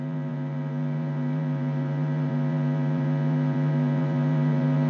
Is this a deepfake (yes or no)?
yes